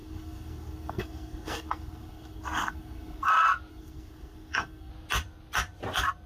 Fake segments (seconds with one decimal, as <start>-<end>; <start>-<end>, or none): 0.0-3.3; 3.7-4.9